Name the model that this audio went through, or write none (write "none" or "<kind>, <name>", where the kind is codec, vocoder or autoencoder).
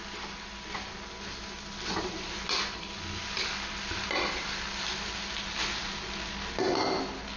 none